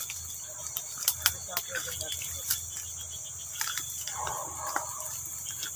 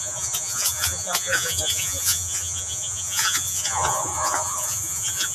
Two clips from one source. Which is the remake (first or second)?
second